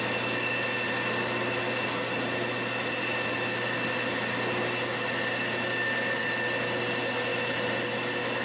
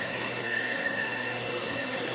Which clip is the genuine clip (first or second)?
first